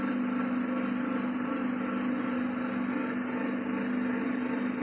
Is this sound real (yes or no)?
yes